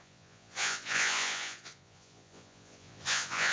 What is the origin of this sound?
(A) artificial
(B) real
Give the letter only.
A